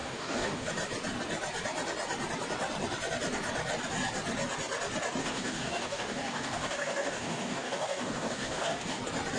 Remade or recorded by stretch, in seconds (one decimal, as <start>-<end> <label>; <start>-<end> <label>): 0.0-0.7 remade; 0.7-5.2 recorded; 5.2-9.0 remade; 9.0-9.4 recorded